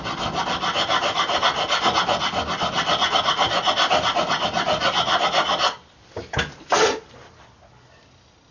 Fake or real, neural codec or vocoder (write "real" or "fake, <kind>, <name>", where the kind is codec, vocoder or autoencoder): real